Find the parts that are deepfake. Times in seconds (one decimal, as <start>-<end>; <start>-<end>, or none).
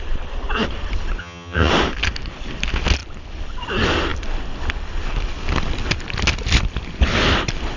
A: 1.2-1.7